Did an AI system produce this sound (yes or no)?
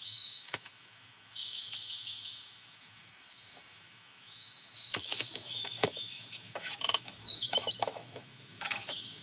yes